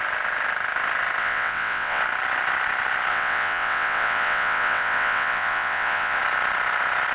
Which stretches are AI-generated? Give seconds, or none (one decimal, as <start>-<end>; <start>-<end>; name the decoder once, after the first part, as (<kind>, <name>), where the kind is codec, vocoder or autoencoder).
1.2-2.0 (vocoder, WaveNeXt); 3.1-6.2